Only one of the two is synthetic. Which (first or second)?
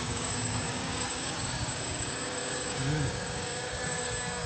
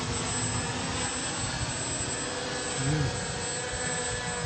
first